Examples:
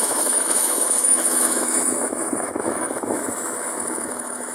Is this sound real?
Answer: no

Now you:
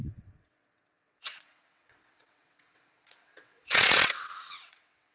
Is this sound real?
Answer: no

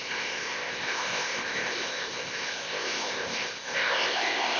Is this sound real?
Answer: no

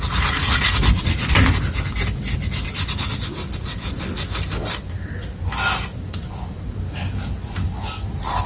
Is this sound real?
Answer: yes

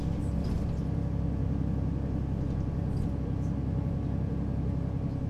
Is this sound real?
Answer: yes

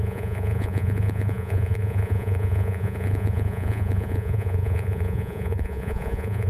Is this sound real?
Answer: no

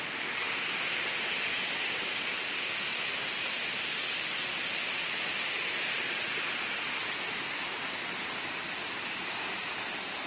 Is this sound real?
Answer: yes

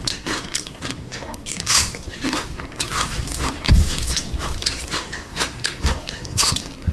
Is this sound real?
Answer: no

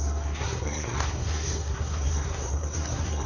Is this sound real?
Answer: no